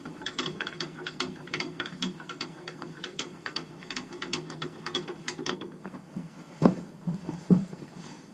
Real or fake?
fake